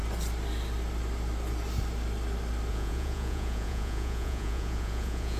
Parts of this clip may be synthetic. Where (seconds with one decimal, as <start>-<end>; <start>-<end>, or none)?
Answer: 2.7-5.4